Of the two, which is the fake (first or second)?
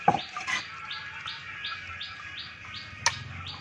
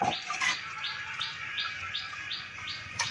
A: second